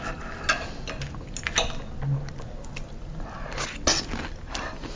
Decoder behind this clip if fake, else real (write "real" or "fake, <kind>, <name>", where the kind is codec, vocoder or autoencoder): real